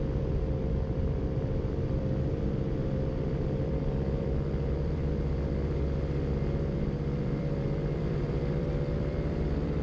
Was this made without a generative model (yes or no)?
no